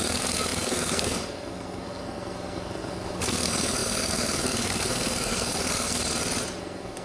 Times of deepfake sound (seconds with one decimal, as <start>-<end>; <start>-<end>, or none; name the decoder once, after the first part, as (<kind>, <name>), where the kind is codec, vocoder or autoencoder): 0.0-6.0 (codec, SNAC); 6.6-7.0